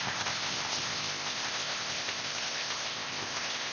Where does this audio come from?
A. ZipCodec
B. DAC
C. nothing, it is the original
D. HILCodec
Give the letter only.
A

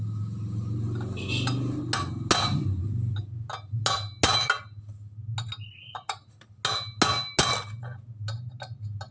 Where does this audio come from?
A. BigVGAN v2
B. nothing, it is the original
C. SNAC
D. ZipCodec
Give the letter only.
B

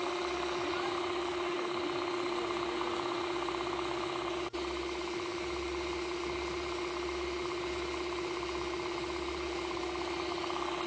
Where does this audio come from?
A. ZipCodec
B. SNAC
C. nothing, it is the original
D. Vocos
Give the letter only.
C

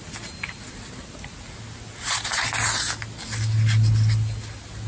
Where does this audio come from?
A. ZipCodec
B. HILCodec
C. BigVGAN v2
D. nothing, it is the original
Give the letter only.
D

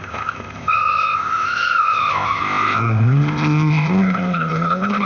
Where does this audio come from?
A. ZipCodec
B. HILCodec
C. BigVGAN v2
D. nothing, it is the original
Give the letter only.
A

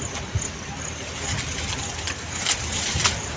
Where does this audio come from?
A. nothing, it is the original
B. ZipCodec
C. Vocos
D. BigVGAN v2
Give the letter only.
A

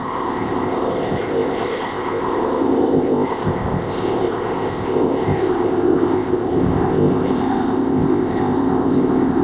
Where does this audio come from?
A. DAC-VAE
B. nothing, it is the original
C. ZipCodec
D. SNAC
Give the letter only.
C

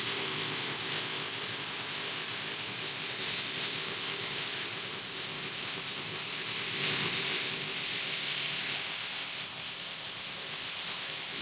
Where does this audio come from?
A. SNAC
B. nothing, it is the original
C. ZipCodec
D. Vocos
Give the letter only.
C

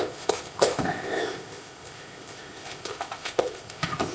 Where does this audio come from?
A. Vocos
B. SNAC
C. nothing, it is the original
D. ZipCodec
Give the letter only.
D